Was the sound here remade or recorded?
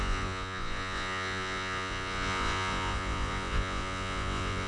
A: remade